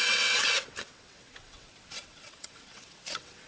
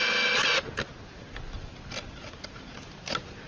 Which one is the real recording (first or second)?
second